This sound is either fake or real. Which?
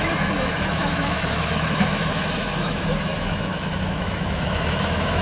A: fake